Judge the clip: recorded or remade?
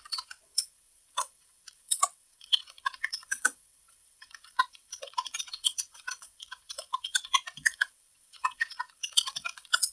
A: remade